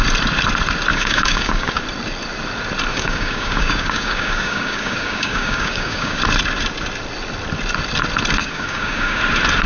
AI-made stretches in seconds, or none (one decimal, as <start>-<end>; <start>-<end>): 0.9-1.8; 2.9-6.2; 8.4-9.2